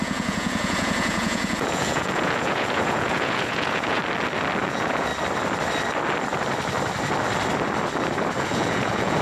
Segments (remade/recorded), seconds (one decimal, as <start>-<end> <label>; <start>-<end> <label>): 0.0-4.0 remade; 4.0-4.6 recorded; 4.6-5.1 remade; 5.1-8.4 recorded; 8.4-9.2 remade